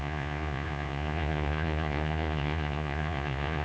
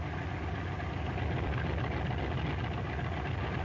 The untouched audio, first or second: second